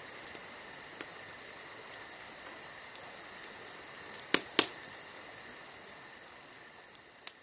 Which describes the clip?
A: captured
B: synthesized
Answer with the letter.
A